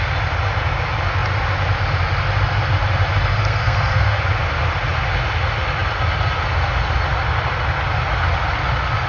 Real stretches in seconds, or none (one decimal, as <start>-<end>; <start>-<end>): 0.0-3.3; 4.2-9.1